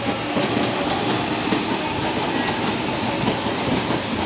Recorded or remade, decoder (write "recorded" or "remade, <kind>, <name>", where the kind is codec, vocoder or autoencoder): recorded